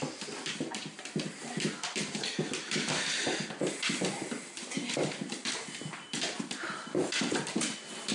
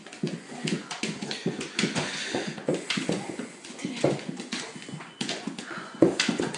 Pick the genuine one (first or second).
first